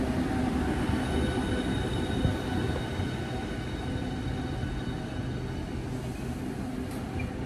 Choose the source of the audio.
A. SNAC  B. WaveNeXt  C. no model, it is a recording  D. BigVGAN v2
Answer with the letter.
C